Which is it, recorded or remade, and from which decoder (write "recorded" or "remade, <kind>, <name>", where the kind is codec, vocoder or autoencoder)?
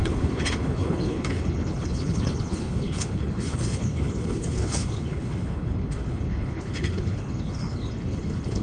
remade, codec, HILCodec